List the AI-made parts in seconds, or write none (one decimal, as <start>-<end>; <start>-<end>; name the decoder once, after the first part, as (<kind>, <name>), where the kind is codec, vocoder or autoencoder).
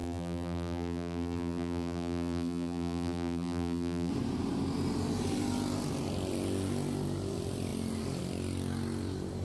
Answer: 0.0-4.1 (vocoder, BigVGAN v2)